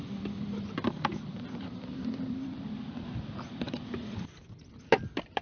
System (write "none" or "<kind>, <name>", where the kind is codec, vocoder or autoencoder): vocoder, BigVGAN v2